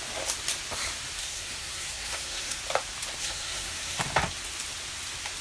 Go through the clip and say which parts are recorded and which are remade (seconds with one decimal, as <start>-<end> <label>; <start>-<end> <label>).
0.0-1.2 recorded; 1.2-2.6 remade; 2.6-3.2 recorded; 3.2-4.0 remade; 4.0-5.4 recorded